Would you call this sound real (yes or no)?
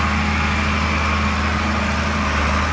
yes